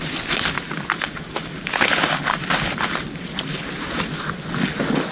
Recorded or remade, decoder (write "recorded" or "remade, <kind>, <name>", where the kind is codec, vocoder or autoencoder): recorded